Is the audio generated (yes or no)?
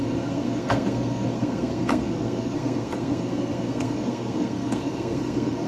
yes